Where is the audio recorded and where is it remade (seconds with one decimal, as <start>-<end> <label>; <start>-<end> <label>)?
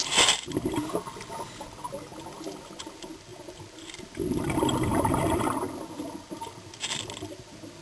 0.0-7.8 recorded